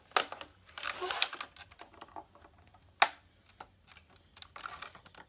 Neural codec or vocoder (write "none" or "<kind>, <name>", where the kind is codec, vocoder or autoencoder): none